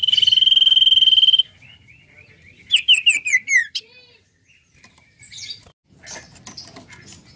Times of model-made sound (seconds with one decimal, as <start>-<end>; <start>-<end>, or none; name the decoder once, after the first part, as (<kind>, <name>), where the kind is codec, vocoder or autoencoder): 3.6-5.2 (vocoder, BigVGAN v2)